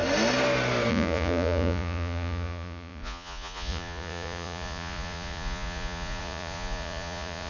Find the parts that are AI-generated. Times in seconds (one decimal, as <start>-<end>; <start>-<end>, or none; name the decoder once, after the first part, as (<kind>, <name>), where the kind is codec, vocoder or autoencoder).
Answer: 0.9-7.5 (vocoder, Vocos)